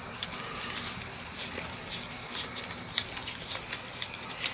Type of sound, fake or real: real